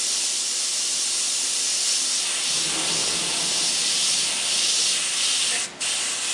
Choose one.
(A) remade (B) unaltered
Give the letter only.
B